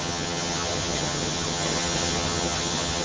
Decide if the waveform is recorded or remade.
remade